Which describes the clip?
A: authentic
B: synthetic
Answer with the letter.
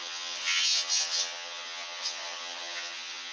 B